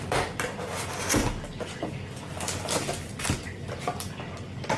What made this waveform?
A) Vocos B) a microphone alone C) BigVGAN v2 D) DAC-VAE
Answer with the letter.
B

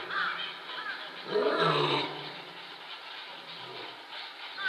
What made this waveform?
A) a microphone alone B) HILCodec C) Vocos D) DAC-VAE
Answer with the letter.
A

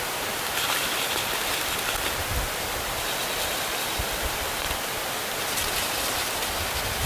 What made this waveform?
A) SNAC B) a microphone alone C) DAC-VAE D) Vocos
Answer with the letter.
B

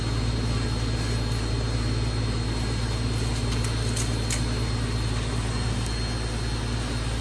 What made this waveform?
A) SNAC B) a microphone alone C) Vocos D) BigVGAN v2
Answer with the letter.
B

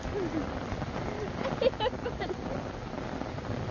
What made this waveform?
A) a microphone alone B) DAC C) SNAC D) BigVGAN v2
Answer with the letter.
A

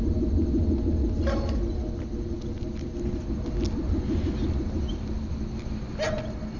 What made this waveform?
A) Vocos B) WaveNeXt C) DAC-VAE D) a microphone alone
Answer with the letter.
D